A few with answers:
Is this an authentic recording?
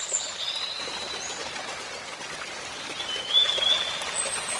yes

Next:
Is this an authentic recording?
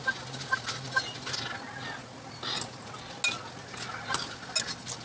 yes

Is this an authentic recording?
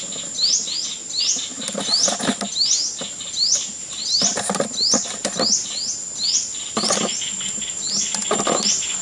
yes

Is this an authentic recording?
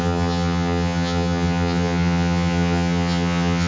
no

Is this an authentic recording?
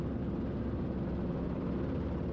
yes